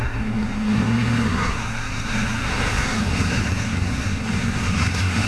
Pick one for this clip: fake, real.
fake